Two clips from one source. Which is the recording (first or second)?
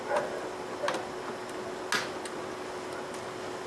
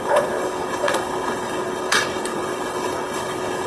first